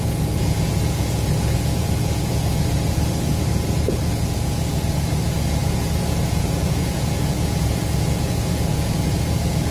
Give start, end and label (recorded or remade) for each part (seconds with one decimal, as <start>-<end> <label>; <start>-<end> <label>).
0.0-9.7 remade